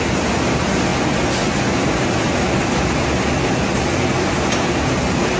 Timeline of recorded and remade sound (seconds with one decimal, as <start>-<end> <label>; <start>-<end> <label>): 0.0-5.4 recorded